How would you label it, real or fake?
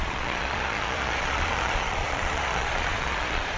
fake